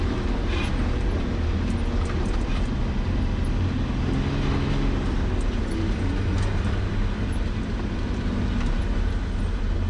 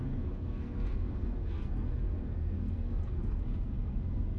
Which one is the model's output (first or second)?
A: second